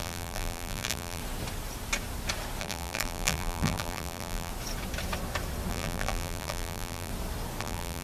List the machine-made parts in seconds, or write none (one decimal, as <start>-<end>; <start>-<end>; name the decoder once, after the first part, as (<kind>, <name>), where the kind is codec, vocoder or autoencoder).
0.0-1.2 (vocoder, BigVGAN v2); 2.6-4.5; 5.7-7.1; 7.6-8.0